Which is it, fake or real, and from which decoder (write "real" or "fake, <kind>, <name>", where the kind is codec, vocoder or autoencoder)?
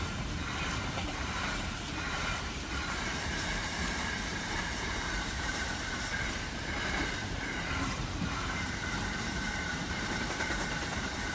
fake, vocoder, BigVGAN v2